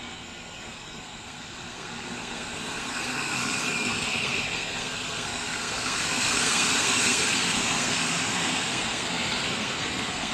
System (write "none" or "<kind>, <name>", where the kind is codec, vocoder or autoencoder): codec, SNAC